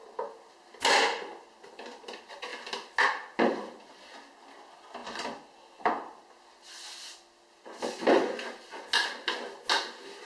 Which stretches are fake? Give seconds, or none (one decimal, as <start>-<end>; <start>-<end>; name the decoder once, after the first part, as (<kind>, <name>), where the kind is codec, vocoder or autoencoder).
none